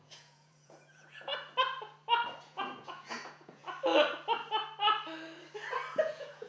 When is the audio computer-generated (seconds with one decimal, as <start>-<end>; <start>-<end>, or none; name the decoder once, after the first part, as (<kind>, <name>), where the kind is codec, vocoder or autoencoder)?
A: 0.0-1.3 (vocoder, Vocos); 2.4-3.6; 5.9-6.5